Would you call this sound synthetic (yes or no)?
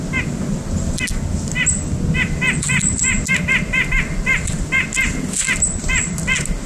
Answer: no